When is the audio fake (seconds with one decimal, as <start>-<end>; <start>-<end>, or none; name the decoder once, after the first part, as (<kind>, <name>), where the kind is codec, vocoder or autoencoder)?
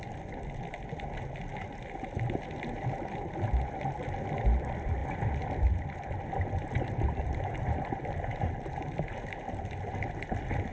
none